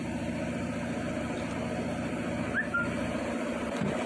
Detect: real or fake real